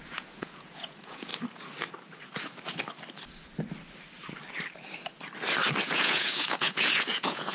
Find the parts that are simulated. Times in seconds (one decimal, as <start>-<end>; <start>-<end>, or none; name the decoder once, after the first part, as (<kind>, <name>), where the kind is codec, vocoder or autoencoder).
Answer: 0.0-1.3 (vocoder, Vocos); 5.8-7.5